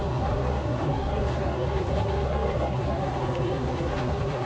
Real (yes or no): no